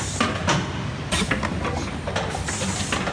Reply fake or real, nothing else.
real